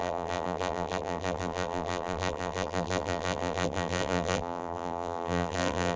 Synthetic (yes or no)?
yes